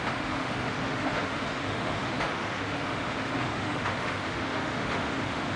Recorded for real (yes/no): no